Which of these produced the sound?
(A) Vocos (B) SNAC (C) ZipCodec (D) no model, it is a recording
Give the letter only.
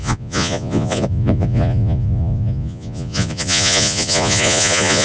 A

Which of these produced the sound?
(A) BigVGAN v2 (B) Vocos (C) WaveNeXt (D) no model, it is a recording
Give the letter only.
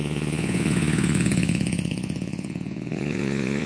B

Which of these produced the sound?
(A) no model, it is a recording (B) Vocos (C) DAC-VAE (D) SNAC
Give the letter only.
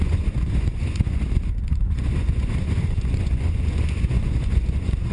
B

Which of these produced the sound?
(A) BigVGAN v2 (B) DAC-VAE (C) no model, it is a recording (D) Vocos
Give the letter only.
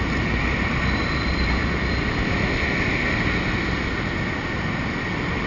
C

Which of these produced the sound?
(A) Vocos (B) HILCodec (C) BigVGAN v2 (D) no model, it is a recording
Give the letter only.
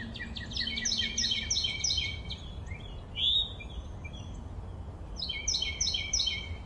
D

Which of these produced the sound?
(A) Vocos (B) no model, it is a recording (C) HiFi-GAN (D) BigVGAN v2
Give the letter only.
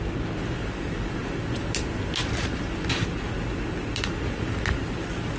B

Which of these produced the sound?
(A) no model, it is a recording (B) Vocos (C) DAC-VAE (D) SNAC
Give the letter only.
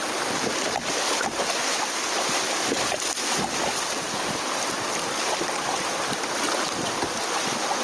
A